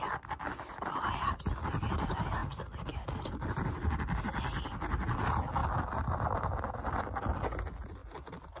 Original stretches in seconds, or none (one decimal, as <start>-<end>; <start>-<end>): 0.0-8.6